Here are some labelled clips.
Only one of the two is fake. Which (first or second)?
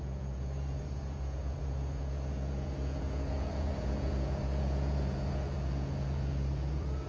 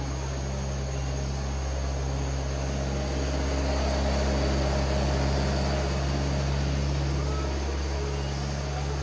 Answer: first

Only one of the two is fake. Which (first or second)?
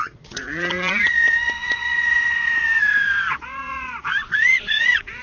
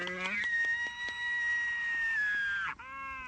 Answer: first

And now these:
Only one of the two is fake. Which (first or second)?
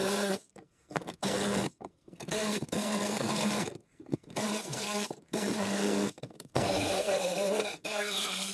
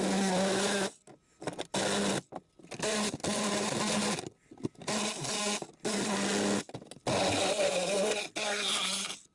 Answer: first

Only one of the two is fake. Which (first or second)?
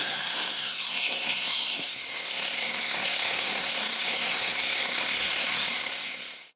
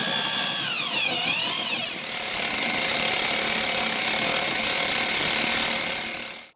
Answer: first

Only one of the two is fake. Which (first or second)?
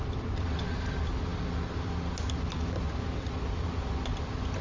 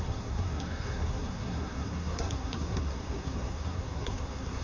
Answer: second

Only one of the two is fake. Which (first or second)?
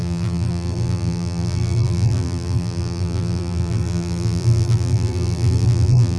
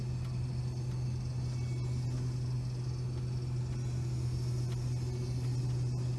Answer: first